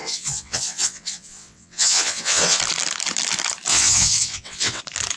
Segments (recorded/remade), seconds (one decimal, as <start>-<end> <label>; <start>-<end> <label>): 0.0-2.6 remade; 2.6-3.7 recorded; 3.7-4.8 remade; 4.8-5.2 recorded